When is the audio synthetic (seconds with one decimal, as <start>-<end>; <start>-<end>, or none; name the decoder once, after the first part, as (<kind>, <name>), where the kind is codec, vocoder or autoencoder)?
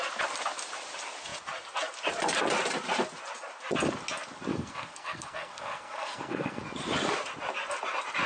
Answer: 4.5-6.6 (codec, SNAC)